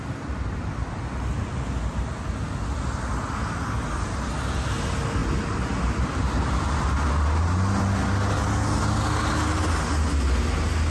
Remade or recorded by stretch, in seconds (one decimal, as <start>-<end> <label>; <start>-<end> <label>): 0.0-10.9 recorded